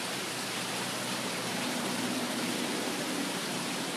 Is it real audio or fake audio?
fake